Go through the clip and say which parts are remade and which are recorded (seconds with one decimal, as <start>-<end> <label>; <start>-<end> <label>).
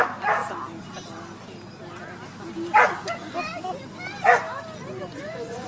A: 0.0-5.1 recorded; 5.1-5.7 remade